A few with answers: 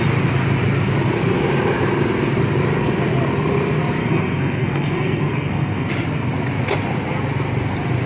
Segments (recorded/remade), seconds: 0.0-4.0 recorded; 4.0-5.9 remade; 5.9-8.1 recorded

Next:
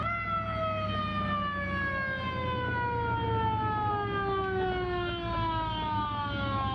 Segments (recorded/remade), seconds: 0.0-6.7 recorded

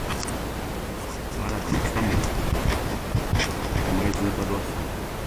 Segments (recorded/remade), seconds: 0.0-5.3 recorded

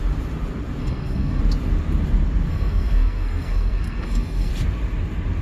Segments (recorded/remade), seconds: 0.0-0.8 recorded; 0.8-1.4 remade; 1.4-2.5 recorded; 2.5-4.5 remade; 4.5-5.4 recorded

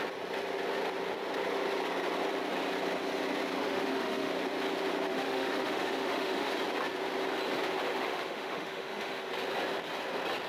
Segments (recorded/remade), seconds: 0.0-3.6 recorded; 3.6-4.3 remade; 4.3-5.1 recorded; 5.1-6.5 remade; 6.5-7.9 recorded; 7.9-9.3 remade; 9.3-10.5 recorded

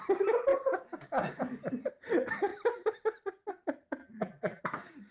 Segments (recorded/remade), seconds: 0.0-4.0 recorded; 4.0-4.6 remade; 4.6-5.1 recorded